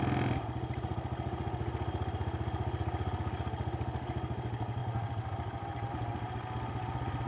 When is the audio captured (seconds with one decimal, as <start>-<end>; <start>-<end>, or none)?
0.0-7.3